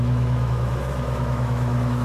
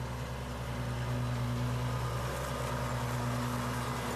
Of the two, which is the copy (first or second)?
first